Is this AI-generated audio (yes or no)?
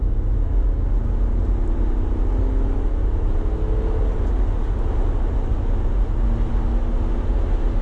no